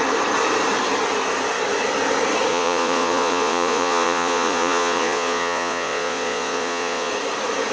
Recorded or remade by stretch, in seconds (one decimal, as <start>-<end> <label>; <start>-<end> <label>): 0.0-2.5 recorded; 2.5-7.1 remade; 7.1-7.7 recorded

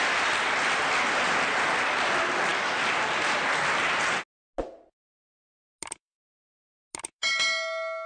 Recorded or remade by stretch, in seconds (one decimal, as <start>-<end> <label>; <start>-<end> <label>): 0.0-8.1 recorded

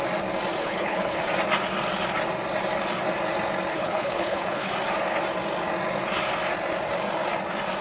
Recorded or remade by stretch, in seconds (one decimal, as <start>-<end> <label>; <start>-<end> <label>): 0.0-0.6 recorded; 0.6-1.2 remade; 1.2-3.7 recorded; 3.7-4.7 remade; 4.7-7.8 recorded

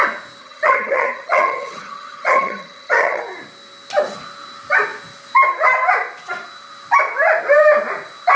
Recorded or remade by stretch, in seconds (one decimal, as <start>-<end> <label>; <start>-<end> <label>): 0.0-0.4 recorded; 0.4-3.2 remade; 3.2-8.4 recorded

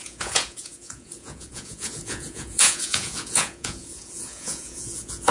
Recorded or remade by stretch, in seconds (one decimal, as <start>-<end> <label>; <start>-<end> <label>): 0.0-5.3 remade